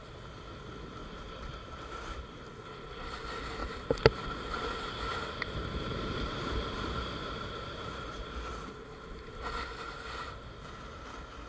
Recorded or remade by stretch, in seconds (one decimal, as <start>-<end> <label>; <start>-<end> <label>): 0.0-1.0 recorded; 1.0-2.2 remade; 2.2-3.6 recorded; 3.6-4.6 remade; 4.6-5.1 recorded; 5.1-9.2 remade; 9.2-11.5 recorded